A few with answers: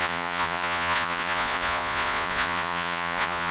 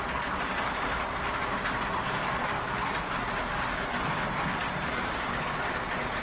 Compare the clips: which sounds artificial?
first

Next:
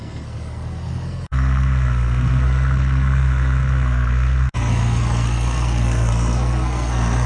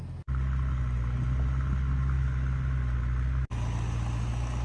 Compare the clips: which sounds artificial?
first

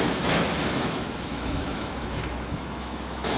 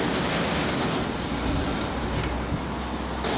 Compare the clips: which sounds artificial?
first